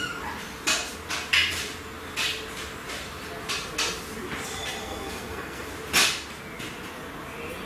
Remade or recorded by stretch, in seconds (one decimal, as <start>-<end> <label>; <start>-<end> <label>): 0.0-4.8 recorded; 4.8-5.7 remade; 5.7-7.7 recorded